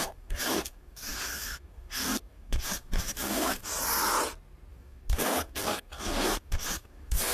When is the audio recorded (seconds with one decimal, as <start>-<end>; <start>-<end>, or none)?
3.7-4.7